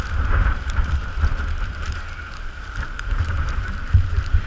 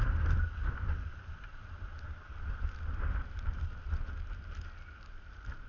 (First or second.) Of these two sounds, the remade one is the first